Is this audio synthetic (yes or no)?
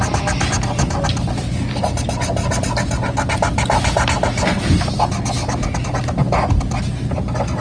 no